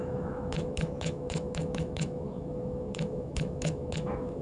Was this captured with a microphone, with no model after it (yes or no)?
no